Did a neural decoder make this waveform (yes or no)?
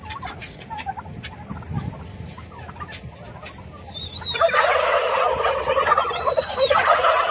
no